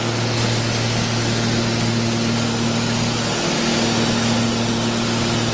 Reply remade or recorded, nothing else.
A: recorded